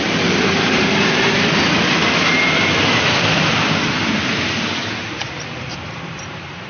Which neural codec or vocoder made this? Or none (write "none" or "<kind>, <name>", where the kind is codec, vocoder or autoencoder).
vocoder, BigVGAN v2